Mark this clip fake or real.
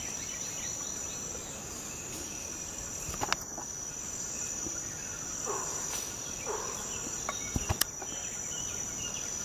real